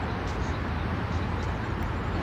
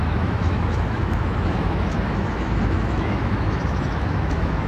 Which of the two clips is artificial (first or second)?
second